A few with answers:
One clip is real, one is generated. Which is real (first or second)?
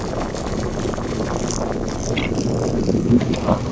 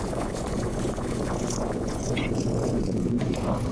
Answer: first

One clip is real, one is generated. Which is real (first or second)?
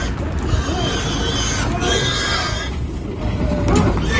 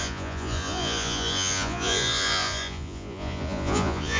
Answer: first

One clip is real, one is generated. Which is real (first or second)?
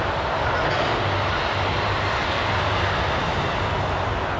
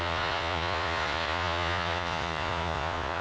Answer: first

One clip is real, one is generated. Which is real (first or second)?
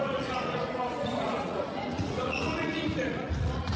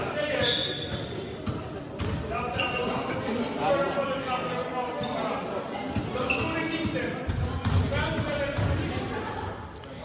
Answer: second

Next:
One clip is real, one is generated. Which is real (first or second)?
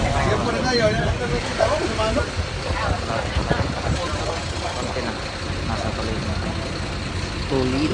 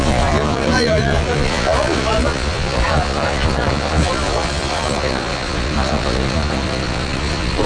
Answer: first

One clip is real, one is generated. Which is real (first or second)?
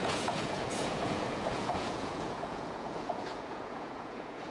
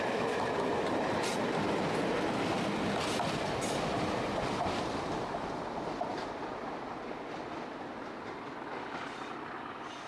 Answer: second